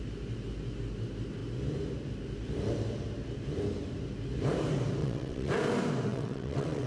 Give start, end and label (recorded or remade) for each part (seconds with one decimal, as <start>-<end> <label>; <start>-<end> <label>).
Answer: 0.0-5.0 recorded; 5.0-5.5 remade; 5.5-6.1 recorded; 6.1-6.9 remade